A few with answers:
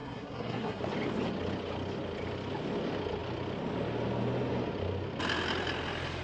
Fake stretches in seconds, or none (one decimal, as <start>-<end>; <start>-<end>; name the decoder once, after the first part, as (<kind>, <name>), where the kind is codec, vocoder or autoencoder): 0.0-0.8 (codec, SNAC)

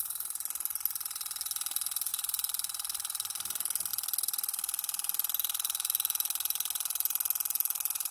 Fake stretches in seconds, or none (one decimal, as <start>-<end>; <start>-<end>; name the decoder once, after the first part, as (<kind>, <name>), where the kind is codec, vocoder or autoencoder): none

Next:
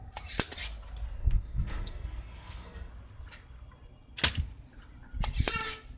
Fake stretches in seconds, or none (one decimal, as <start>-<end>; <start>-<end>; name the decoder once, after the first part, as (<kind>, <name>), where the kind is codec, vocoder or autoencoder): 1.2-2.9 (codec, SNAC)